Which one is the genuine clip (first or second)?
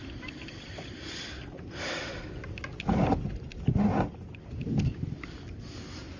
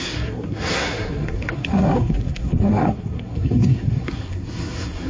first